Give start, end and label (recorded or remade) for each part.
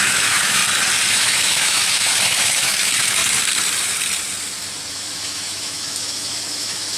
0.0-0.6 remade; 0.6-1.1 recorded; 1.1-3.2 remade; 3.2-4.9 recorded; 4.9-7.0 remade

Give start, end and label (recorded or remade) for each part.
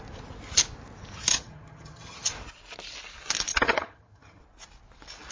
0.0-1.3 recorded; 1.3-2.3 remade; 2.3-3.5 recorded; 3.5-4.4 remade; 4.4-5.3 recorded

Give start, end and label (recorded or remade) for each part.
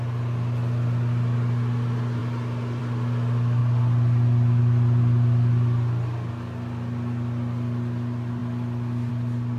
0.0-9.6 recorded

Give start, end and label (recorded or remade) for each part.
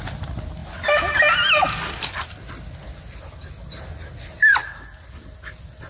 0.0-5.9 recorded